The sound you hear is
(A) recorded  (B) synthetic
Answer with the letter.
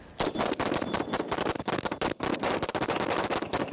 A